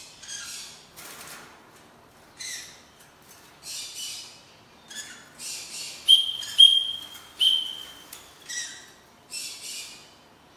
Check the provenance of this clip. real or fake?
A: real